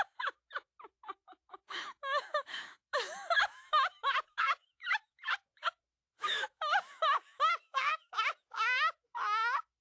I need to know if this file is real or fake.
fake